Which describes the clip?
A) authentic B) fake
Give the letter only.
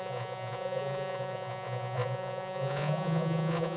B